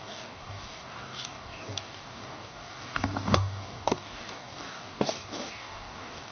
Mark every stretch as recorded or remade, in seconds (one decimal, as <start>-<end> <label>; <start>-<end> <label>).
0.0-6.3 remade